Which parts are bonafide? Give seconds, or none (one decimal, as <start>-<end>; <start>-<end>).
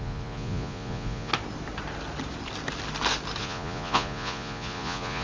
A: 1.3-3.4